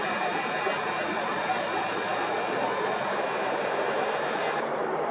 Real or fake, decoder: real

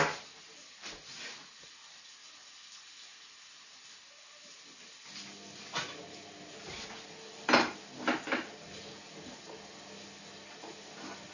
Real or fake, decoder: real